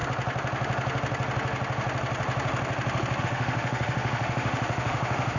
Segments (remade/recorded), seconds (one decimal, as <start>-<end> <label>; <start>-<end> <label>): 0.0-3.2 recorded; 3.2-5.4 remade